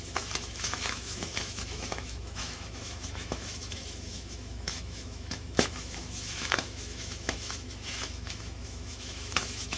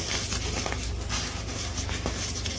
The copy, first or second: first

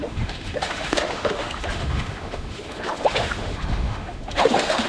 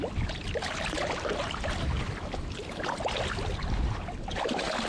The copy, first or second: first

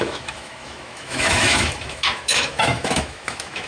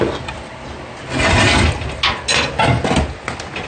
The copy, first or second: first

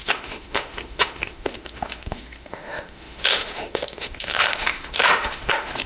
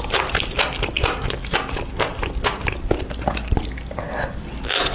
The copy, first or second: first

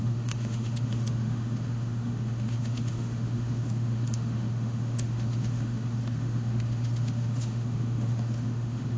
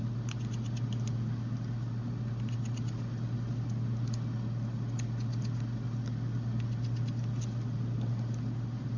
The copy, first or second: first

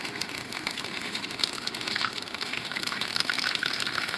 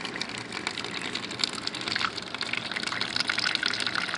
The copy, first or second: first